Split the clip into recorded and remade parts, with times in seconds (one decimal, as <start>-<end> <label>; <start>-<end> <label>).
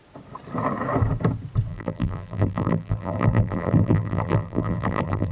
0.0-1.7 recorded; 1.7-5.3 remade